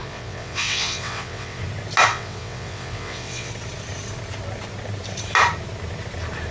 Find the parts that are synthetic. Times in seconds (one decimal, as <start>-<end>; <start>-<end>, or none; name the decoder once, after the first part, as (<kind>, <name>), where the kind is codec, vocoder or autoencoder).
0.0-1.6 (vocoder, WaveNeXt); 2.1-3.5